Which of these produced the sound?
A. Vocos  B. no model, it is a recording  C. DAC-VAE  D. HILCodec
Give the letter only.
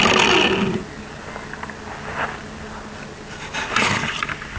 B